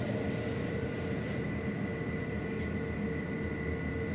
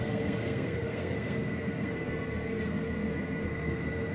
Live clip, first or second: first